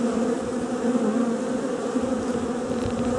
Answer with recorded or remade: recorded